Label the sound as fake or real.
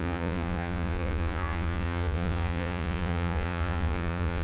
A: fake